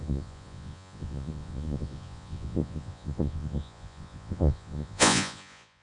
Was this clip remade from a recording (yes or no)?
yes